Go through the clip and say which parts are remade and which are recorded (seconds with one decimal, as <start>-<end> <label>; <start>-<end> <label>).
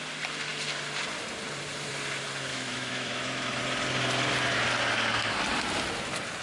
0.0-2.5 recorded; 2.5-3.6 remade; 3.6-6.4 recorded